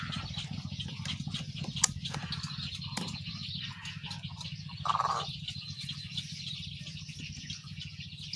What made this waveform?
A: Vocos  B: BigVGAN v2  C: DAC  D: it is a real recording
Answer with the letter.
D